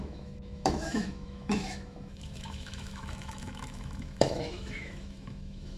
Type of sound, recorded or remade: remade